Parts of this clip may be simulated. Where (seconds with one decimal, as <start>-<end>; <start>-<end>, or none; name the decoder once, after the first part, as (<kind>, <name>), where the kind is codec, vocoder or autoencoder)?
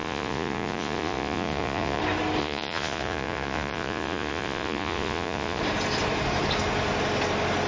0.0-2.0 (vocoder, Vocos); 2.4-5.6